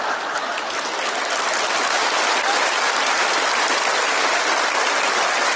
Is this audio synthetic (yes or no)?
no